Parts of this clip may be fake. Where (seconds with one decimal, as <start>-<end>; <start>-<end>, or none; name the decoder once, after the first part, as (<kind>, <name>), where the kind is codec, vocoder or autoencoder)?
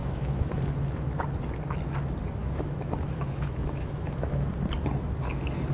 0.0-0.6 (autoencoder, DAC-VAE); 2.4-4.5